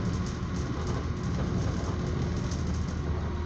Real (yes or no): yes